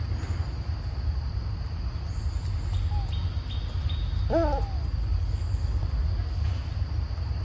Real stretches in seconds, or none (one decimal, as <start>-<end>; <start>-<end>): 0.0-4.8; 5.8-7.4